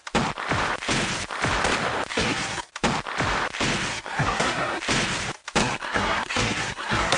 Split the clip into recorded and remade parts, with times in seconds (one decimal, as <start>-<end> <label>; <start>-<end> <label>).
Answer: 0.0-2.1 recorded; 2.1-2.7 remade; 2.7-3.9 recorded; 3.9-4.8 remade; 4.8-5.6 recorded; 5.6-7.2 remade